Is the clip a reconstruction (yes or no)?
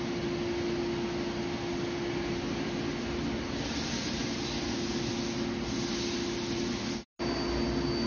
no